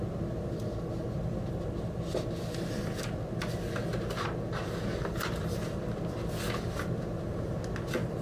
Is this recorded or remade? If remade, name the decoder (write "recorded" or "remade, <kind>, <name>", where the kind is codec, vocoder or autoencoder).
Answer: recorded